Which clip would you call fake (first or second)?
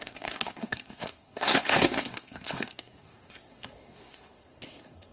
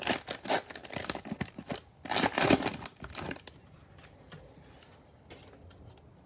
first